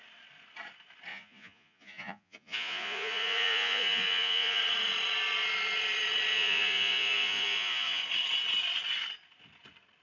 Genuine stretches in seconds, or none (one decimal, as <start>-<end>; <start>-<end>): 0.0-1.1; 4.6-6.3; 8.0-10.0